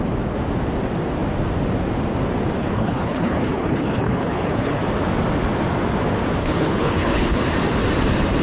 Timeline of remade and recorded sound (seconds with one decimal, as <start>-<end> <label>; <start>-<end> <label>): 0.0-2.6 recorded; 2.6-4.8 remade; 4.8-6.4 recorded; 6.4-7.4 remade; 7.4-8.4 recorded